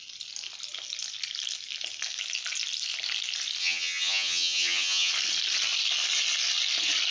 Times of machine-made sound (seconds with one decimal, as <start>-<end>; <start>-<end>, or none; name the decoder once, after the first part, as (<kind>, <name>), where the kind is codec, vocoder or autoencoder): 3.6-5.1 (vocoder, HiFi-GAN)